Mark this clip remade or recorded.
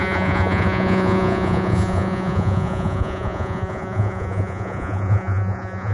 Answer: remade